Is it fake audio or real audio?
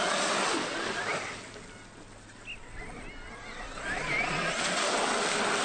real